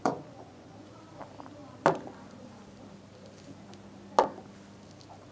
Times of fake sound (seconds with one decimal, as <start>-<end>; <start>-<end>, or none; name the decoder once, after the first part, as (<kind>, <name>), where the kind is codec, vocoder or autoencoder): 0.0-1.0 (vocoder, Vocos)

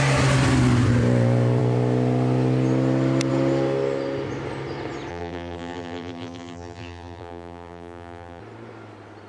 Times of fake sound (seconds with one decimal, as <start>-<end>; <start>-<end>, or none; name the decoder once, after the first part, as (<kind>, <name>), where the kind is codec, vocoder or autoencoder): 5.1-8.4 (vocoder, BigVGAN v2)

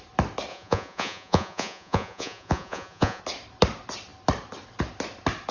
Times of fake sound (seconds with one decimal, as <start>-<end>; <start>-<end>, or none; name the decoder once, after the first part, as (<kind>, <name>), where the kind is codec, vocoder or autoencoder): 0.5-3.2 (vocoder, Vocos)

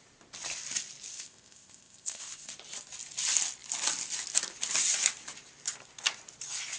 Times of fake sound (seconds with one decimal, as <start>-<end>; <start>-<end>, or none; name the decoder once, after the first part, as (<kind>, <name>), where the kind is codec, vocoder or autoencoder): 1.1-2.5 (codec, ZipCodec)

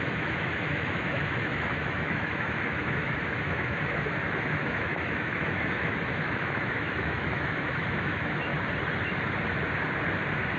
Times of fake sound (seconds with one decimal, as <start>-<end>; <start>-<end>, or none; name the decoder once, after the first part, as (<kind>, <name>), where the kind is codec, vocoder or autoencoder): 0.0-8.5 (autoencoder, DAC-VAE)

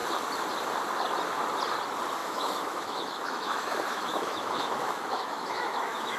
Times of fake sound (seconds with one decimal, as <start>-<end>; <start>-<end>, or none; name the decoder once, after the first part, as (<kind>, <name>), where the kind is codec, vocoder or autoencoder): 2.2-6.2 (autoencoder, DAC-VAE)